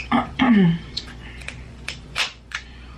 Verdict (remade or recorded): remade